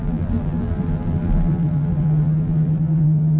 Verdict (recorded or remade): remade